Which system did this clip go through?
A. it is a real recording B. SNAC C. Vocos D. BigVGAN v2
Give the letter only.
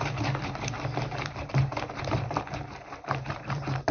D